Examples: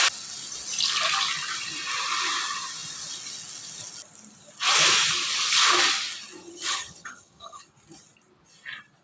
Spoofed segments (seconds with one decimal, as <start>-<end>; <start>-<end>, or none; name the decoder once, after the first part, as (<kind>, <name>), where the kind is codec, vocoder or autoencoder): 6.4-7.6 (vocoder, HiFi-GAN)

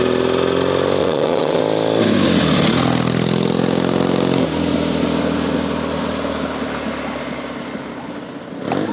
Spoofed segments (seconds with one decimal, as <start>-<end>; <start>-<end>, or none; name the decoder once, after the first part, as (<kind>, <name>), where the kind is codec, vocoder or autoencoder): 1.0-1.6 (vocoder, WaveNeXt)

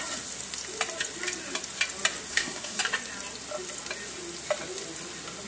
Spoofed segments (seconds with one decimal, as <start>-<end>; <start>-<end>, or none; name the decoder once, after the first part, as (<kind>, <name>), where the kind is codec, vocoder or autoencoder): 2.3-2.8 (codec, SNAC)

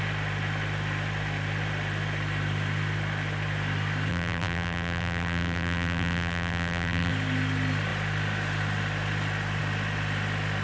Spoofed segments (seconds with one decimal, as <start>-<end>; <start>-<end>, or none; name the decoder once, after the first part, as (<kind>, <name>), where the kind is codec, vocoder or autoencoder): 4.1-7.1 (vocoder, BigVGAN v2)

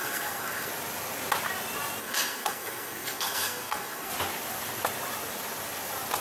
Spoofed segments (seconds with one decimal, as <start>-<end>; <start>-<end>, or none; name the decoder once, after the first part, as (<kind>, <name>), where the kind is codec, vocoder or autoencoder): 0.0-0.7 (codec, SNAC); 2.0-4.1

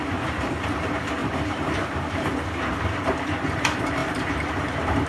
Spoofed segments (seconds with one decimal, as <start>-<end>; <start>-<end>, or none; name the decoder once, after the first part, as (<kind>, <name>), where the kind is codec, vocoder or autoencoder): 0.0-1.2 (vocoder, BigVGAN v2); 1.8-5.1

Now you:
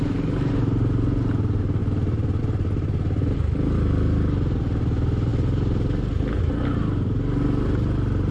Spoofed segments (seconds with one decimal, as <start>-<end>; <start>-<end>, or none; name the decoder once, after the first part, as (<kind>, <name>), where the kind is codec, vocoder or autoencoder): none

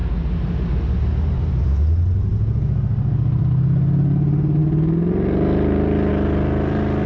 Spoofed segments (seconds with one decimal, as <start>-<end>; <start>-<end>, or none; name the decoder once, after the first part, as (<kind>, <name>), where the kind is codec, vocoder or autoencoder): none